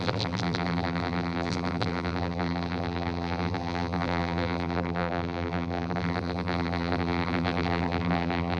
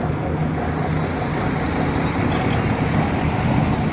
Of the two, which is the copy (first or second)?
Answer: first